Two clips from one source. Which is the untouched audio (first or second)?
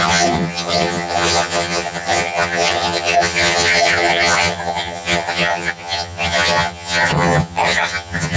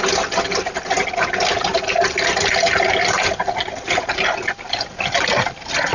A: second